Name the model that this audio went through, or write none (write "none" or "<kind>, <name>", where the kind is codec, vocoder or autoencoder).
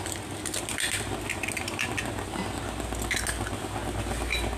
none